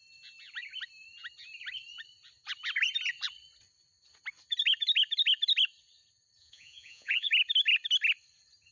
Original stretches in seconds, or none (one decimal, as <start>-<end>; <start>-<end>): 0.0-6.4; 7.3-8.7